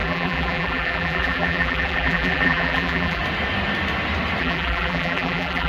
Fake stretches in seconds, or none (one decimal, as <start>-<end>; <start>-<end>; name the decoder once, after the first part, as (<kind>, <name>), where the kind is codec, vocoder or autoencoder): 0.0-3.2 (vocoder, BigVGAN v2); 4.4-5.7